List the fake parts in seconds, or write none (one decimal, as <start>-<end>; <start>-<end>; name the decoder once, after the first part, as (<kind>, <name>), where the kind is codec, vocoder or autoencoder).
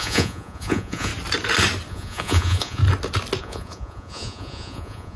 0.0-1.1 (vocoder, Vocos); 1.9-2.8; 3.4-5.2